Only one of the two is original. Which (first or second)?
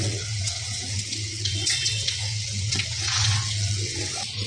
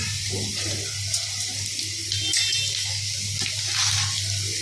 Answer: second